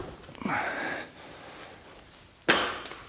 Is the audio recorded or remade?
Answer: recorded